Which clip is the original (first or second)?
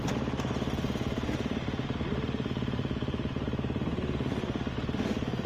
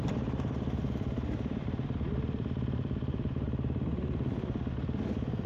first